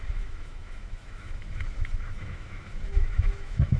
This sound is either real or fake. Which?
fake